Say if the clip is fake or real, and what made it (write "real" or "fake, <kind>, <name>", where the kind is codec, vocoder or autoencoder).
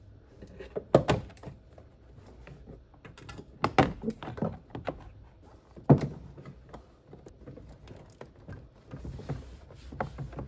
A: real